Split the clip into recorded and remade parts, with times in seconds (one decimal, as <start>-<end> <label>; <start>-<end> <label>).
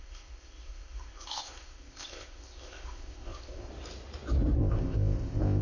0.0-3.7 remade; 3.7-4.6 recorded; 4.6-5.6 remade